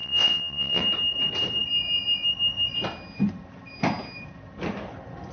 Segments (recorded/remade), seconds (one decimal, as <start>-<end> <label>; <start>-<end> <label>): 0.0-0.8 remade; 0.8-5.3 recorded